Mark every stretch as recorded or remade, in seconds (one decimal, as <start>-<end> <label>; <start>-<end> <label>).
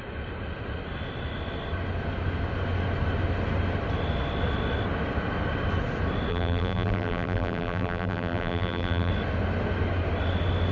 0.0-6.3 recorded; 6.3-9.1 remade; 9.1-10.7 recorded